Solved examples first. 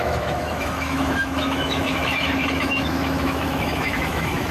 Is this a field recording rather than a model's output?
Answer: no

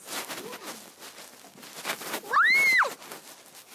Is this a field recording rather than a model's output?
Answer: yes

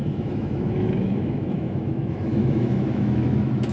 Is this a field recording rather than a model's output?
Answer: no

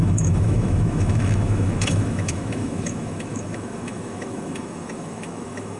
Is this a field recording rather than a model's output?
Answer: no